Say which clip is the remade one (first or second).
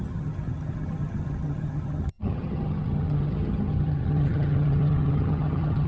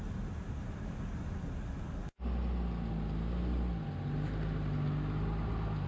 first